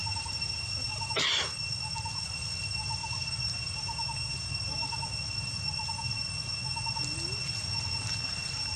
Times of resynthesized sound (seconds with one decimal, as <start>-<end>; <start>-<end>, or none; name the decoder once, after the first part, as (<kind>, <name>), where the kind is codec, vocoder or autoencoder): 0.0-1.1 (vocoder, BigVGAN v2); 3.0-4.5